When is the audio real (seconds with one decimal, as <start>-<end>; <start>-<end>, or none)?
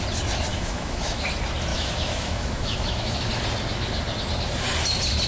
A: 0.0-0.5; 1.2-1.7; 3.2-5.3